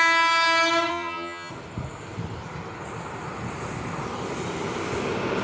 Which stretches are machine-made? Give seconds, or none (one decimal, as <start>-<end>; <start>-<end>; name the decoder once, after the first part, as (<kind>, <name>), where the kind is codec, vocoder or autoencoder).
0.9-1.5 (vocoder, HiFi-GAN)